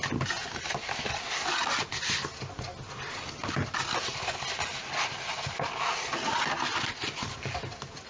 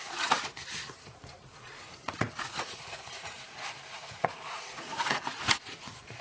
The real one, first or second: first